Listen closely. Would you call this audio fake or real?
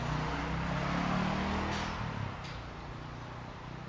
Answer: real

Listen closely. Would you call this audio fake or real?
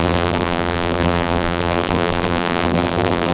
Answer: fake